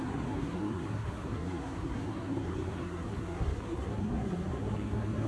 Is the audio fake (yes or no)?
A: yes